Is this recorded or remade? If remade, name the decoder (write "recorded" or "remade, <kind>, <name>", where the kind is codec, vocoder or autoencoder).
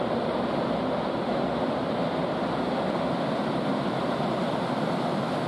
remade, vocoder, BigVGAN v2